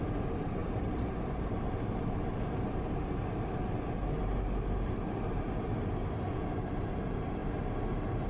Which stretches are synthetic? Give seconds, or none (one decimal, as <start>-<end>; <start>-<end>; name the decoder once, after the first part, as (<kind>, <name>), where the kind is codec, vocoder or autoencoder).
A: none